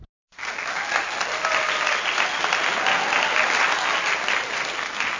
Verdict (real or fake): real